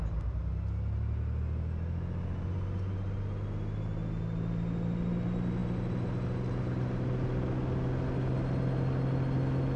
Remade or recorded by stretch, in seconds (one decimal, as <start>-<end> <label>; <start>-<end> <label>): 0.0-9.8 recorded